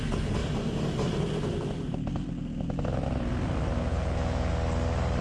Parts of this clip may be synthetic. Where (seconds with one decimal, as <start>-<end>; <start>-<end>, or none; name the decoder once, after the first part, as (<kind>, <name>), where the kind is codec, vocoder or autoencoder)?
3.9-4.5 (vocoder, Vocos)